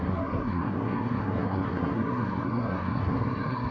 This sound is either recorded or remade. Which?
remade